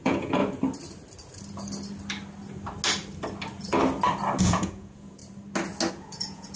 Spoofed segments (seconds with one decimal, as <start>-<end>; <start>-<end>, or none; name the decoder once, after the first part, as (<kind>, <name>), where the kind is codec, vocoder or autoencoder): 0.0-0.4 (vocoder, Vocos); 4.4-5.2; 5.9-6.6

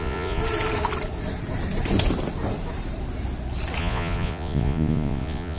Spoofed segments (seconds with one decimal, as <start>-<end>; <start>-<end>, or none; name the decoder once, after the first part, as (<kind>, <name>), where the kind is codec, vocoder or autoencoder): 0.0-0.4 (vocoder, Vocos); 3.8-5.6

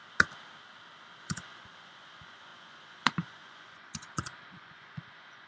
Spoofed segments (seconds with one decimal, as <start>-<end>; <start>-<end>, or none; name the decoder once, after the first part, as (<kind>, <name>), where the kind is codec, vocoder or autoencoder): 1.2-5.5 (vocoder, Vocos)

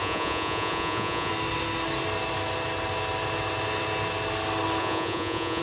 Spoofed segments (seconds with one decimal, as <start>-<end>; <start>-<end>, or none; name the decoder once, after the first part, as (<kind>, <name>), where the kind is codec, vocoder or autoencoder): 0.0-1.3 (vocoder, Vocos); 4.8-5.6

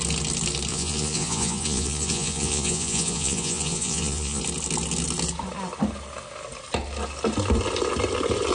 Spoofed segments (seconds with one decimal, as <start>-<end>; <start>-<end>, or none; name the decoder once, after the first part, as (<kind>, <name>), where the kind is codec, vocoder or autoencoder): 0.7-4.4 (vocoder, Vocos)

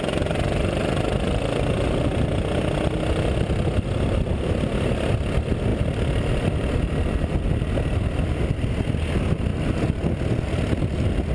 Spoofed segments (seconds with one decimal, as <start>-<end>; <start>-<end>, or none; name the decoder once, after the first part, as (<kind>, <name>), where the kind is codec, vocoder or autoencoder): none

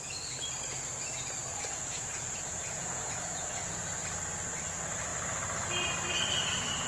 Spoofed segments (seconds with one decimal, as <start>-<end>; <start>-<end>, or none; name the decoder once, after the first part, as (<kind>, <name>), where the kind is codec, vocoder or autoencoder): 1.5-4.0 (vocoder, Vocos)